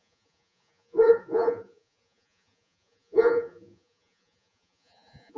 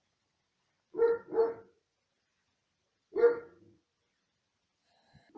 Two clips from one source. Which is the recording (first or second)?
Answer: second